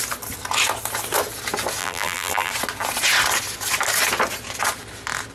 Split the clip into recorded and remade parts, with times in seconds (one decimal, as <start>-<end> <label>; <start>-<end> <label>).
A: 0.0-1.8 recorded; 1.8-2.5 remade; 2.5-5.3 recorded